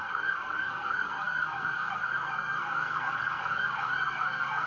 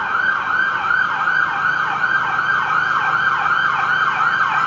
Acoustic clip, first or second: second